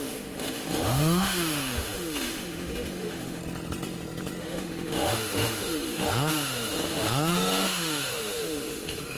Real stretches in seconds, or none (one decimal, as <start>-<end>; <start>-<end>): 3.4-4.4